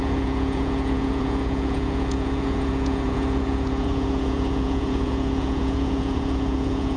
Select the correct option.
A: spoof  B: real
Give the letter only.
A